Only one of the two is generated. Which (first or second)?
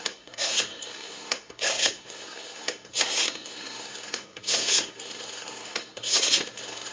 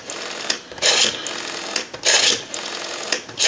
first